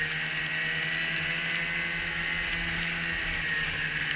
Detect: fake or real real